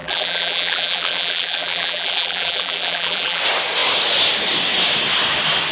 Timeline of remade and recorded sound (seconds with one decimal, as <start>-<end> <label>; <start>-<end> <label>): 0.0-3.4 remade; 3.4-5.7 recorded